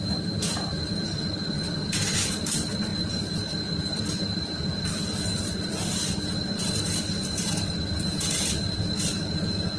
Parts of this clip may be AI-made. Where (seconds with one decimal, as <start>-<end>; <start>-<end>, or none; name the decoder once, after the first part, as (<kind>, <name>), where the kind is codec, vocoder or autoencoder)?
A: 2.9-4.6 (vocoder, BigVGAN v2); 5.7-9.8